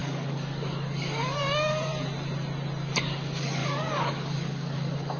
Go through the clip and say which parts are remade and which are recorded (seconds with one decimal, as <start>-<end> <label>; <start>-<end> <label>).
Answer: 0.0-1.9 remade; 1.9-3.0 recorded; 3.0-5.2 remade